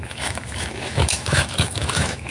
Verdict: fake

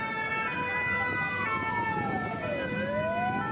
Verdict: real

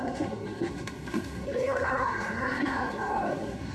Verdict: fake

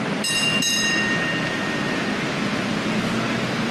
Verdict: real